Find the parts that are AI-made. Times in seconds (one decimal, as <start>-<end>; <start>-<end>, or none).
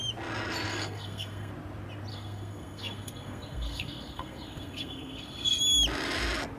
0.7-1.5; 2.1-5.6